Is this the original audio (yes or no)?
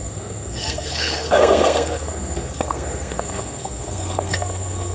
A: no